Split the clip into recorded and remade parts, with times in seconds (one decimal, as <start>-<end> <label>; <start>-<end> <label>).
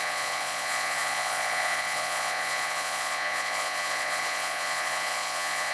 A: 0.0-5.7 remade